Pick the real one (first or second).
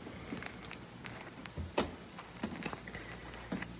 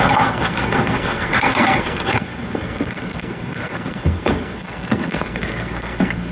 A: first